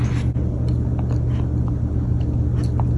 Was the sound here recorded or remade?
recorded